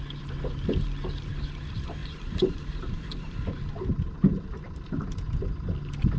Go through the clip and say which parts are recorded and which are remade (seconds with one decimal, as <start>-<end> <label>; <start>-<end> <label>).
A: 0.0-2.0 recorded; 2.0-3.6 remade; 3.6-6.2 recorded